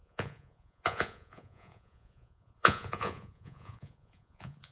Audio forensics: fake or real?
fake